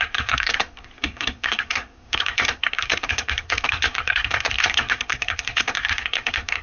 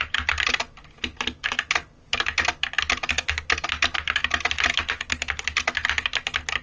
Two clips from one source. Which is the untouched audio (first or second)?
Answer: second